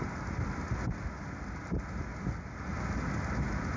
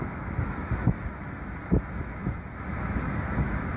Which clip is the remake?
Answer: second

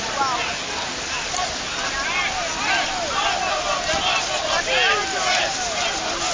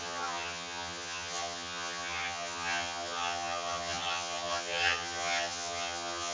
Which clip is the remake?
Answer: second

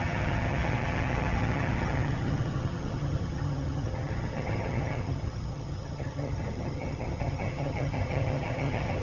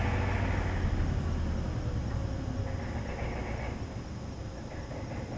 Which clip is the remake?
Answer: first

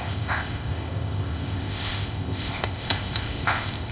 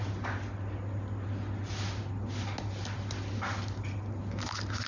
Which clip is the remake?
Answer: first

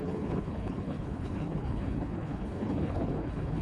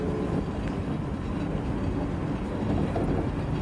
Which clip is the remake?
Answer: first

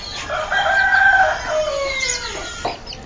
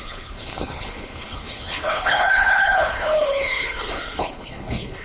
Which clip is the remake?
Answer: second